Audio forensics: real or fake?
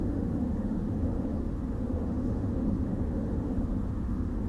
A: fake